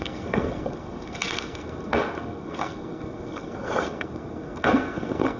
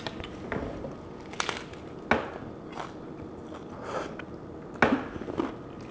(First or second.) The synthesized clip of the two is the first